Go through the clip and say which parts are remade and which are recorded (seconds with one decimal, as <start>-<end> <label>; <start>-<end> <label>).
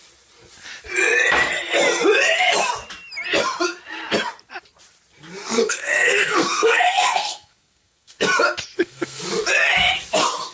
0.0-5.4 recorded; 5.4-8.2 remade; 8.2-8.7 recorded; 8.7-9.2 remade; 9.2-10.5 recorded